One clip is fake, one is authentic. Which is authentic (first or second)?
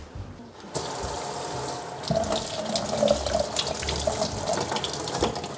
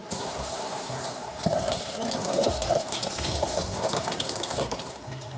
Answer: first